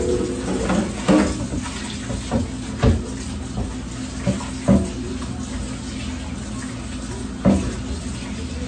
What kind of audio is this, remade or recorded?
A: recorded